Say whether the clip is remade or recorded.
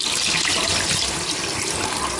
recorded